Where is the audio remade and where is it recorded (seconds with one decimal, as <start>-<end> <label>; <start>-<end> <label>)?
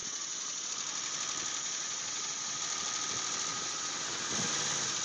0.0-0.7 remade; 0.7-1.6 recorded; 1.6-2.6 remade; 2.6-3.5 recorded; 3.5-4.3 remade; 4.3-5.0 recorded